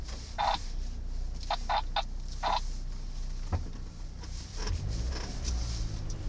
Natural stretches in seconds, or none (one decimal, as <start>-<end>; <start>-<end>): 0.0-6.3